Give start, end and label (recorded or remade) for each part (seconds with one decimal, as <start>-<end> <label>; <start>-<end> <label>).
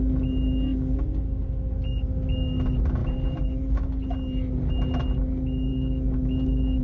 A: 0.0-5.7 recorded; 5.7-6.8 remade